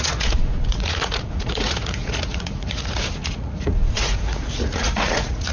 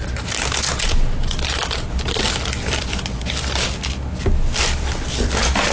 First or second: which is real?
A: second